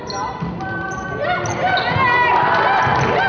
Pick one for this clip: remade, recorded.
recorded